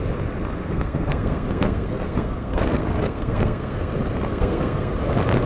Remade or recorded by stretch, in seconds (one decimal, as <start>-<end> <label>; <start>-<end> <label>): 0.0-0.6 recorded; 0.6-3.9 remade; 3.9-4.3 recorded; 4.3-4.9 remade; 4.9-5.5 recorded